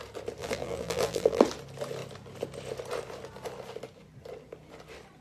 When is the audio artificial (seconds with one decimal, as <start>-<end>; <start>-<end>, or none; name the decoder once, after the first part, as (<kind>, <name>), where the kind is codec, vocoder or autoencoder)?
0.4-1.4 (vocoder, BigVGAN v2)